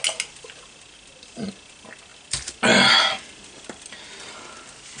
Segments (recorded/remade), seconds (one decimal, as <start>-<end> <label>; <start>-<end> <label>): 0.0-5.0 recorded